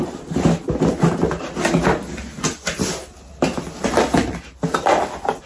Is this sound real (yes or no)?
yes